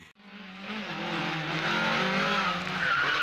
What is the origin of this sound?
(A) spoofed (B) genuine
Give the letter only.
B